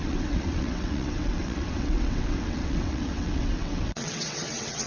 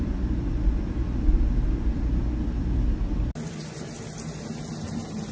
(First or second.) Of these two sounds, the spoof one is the first